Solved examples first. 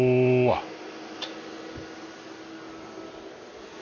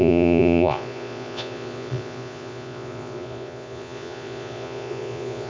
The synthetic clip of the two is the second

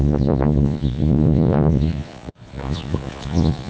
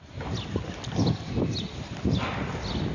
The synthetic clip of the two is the first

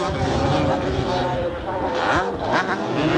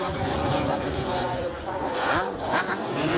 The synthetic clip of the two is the second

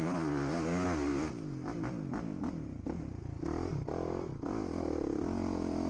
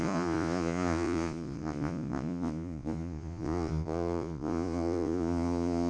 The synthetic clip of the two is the second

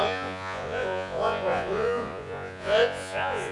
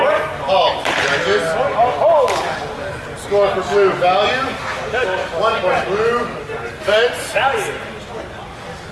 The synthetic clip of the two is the first